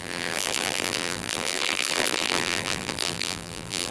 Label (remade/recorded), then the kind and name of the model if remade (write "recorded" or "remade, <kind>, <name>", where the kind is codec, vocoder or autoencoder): remade, vocoder, BigVGAN v2